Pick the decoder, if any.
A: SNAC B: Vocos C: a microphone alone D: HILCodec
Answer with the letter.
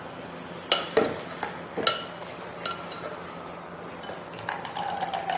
C